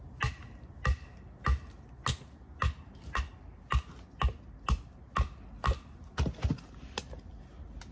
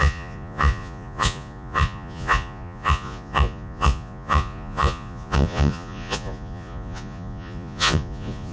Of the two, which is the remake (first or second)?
second